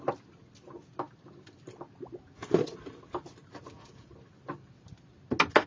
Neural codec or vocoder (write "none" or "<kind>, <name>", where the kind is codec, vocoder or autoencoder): none